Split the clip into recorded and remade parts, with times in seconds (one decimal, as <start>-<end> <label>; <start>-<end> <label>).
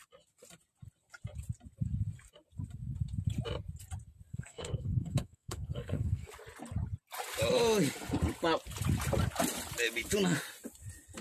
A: 0.0-4.3 recorded; 4.3-6.3 remade; 6.3-11.2 recorded